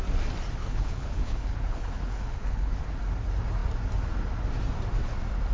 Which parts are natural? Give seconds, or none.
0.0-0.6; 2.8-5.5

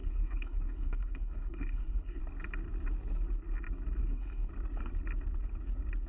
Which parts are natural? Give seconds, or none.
2.2-4.0; 4.5-6.1

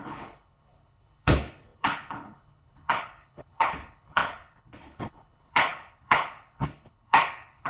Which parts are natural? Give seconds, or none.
none

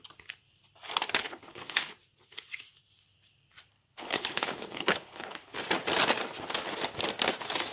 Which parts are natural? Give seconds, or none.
0.0-1.2; 1.9-3.7; 5.6-7.7

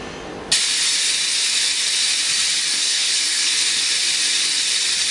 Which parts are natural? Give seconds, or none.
0.0-2.7; 3.5-5.1

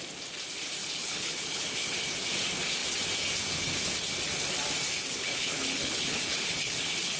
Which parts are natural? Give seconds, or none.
0.0-0.8; 2.0-5.0